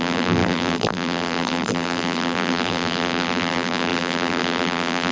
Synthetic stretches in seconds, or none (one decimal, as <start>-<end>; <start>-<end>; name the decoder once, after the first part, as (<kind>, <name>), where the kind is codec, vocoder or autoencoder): 0.0-5.1 (vocoder, BigVGAN v2)